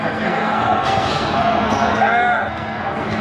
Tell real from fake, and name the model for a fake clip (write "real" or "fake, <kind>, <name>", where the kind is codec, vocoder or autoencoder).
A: fake, codec, SNAC